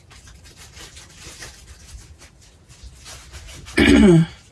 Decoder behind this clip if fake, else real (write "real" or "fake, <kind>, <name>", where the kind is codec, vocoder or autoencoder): real